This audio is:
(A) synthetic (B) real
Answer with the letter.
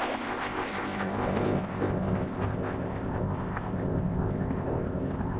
A